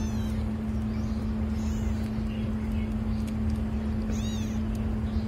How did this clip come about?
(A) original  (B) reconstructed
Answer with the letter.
A